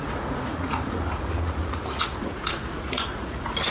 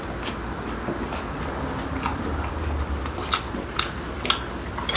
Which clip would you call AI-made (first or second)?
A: first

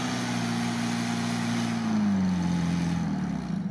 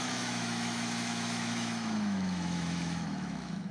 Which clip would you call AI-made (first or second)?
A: second